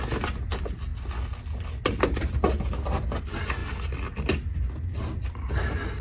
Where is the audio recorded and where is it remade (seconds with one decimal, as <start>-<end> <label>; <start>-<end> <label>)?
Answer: 0.0-6.0 recorded